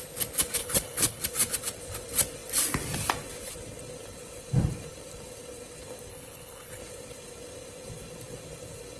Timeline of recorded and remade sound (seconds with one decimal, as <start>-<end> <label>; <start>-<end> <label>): 0.0-0.6 recorded; 0.6-1.2 remade; 1.2-6.1 recorded; 6.1-6.8 remade; 6.8-9.0 recorded